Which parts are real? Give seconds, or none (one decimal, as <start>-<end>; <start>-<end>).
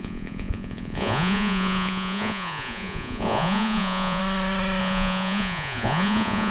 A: 4.2-4.8